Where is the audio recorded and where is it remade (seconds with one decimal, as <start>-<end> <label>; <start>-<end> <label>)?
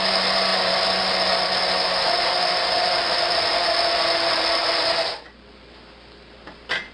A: 0.0-6.9 recorded